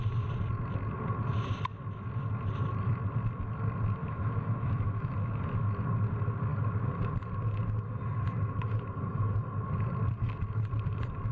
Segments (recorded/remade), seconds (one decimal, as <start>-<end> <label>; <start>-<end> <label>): 0.0-4.0 recorded; 4.0-5.1 remade; 5.1-11.3 recorded